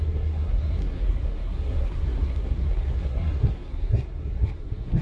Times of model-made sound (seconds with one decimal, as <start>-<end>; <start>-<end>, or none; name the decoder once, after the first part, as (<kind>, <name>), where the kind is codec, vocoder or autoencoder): 0.0-5.0 (codec, SNAC)